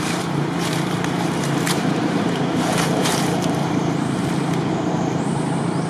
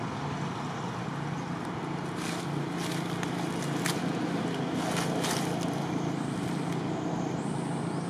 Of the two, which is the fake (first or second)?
first